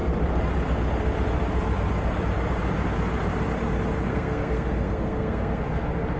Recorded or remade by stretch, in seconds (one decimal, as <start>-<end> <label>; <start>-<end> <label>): 0.0-4.1 recorded; 4.1-5.6 remade; 5.6-6.2 recorded